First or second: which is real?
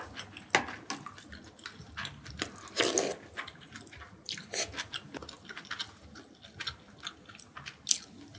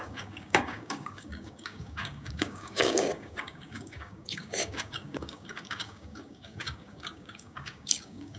first